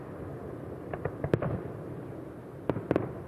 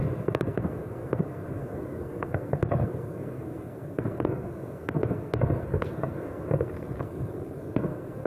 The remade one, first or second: second